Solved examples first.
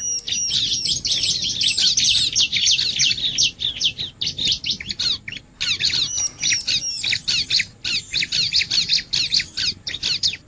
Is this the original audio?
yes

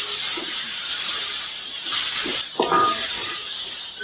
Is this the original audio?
no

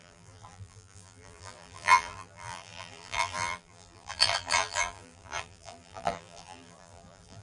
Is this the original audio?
no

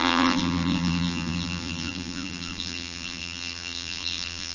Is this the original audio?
no